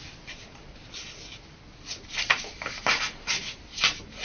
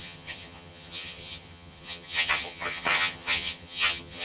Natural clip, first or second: first